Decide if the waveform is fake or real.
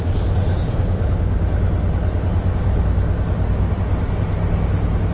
real